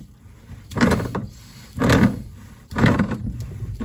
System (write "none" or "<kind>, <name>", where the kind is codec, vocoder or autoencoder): vocoder, BigVGAN v2